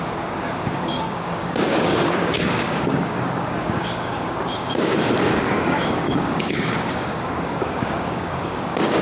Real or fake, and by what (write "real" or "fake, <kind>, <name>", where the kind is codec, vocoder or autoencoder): fake, codec, DAC